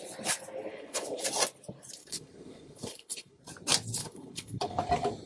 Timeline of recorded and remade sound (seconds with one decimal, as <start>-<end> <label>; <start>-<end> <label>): 0.0-0.7 recorded; 0.7-1.2 remade; 1.2-2.0 recorded; 2.0-3.4 remade; 3.4-4.0 recorded; 4.0-4.8 remade; 4.8-5.3 recorded